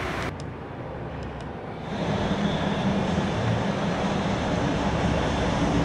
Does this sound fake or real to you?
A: fake